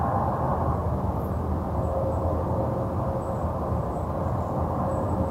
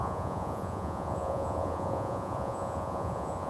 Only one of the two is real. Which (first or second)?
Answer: first